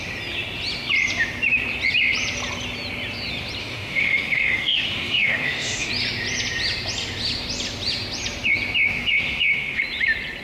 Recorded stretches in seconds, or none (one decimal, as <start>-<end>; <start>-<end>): 0.0-3.6; 5.9-8.9; 9.8-10.4